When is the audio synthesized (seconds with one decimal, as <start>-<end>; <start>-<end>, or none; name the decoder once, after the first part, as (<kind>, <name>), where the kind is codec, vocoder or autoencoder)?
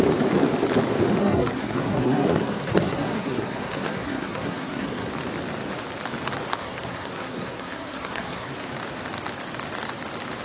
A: 1.2-5.1 (codec, SNAC); 6.6-8.5